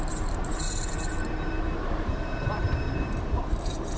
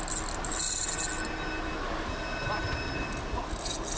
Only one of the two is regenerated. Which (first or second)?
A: first